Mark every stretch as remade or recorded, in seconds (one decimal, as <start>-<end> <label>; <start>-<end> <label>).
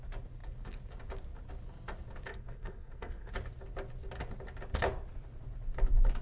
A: 0.0-2.3 recorded; 2.3-3.3 remade; 3.3-6.2 recorded